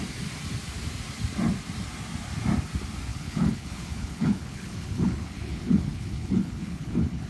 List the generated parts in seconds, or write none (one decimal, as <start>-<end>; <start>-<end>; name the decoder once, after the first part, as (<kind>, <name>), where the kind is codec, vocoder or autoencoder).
3.1-7.3 (codec, HILCodec)